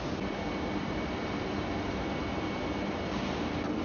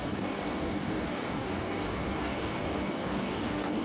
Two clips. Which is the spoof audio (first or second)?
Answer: second